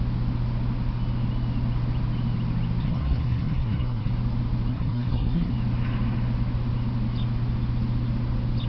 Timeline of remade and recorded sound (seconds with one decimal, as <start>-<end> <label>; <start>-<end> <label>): 0.0-2.8 recorded; 2.8-4.1 remade; 4.1-4.7 recorded; 4.7-5.5 remade; 5.5-8.7 recorded

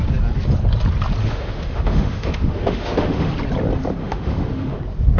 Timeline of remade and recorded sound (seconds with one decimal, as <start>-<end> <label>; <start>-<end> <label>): 0.0-1.2 recorded; 1.2-3.3 remade; 3.3-4.0 recorded; 4.0-4.8 remade; 4.8-5.2 recorded

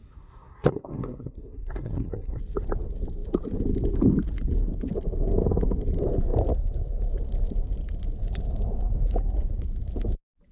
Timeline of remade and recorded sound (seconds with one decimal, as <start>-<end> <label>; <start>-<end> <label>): 0.0-2.4 remade; 2.4-10.5 recorded

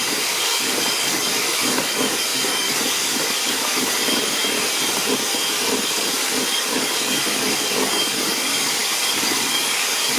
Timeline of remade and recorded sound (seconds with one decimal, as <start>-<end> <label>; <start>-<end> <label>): 0.0-4.4 remade; 4.4-5.8 recorded; 5.8-10.2 remade